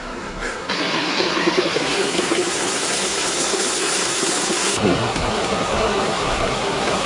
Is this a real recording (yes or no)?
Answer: no